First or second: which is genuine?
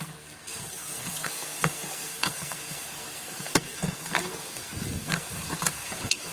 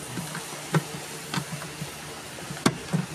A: second